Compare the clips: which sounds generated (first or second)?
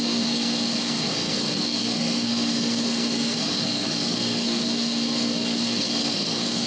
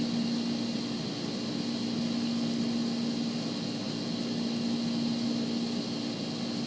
first